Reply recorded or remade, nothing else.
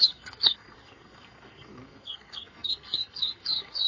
remade